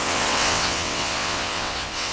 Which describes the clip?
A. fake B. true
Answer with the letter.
A